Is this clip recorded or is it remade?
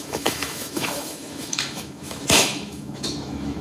remade